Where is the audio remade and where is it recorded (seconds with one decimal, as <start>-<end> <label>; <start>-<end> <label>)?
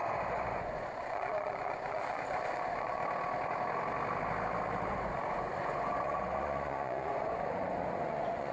0.0-3.0 remade; 3.0-4.9 recorded; 4.9-8.5 remade